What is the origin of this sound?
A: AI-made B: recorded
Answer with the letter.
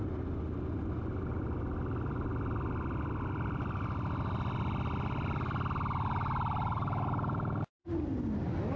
B